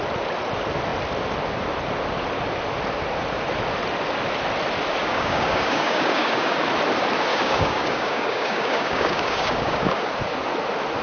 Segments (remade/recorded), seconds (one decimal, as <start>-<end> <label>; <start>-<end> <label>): 0.0-5.0 recorded; 5.0-6.6 remade; 6.6-7.3 recorded; 7.3-10.1 remade; 10.1-11.0 recorded